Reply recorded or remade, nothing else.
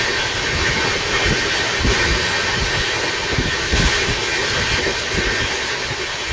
recorded